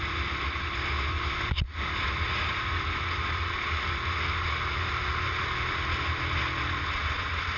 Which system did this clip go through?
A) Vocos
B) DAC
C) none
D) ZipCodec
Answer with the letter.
C